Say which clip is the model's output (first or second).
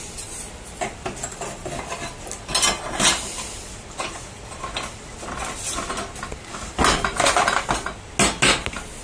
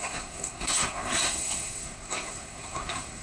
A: second